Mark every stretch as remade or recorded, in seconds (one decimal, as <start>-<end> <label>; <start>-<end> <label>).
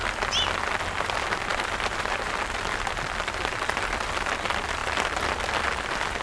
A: 0.0-1.5 recorded; 1.5-3.7 remade; 3.7-4.8 recorded; 4.8-6.2 remade